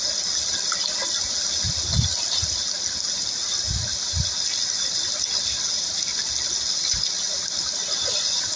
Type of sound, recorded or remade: recorded